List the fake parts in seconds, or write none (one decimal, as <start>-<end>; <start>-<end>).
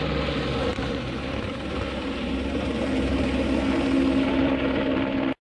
0.7-3.4